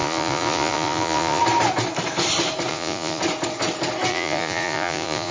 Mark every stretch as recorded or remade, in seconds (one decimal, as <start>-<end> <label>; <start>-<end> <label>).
0.0-1.4 remade; 1.4-2.7 recorded; 2.7-3.2 remade; 3.2-4.1 recorded; 4.1-5.3 remade